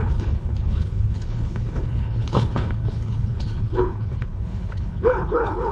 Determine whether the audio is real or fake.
fake